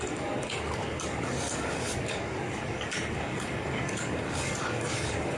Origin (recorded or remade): remade